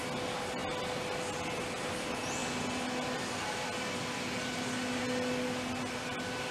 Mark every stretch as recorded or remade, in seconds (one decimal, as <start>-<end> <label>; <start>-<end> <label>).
0.0-6.5 recorded